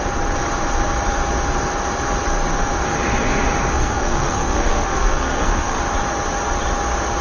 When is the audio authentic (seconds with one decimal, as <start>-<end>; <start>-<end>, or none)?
0.0-3.7; 5.8-7.2